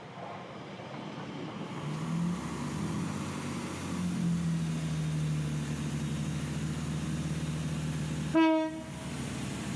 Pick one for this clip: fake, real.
real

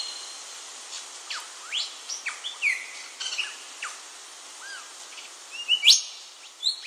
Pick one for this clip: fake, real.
real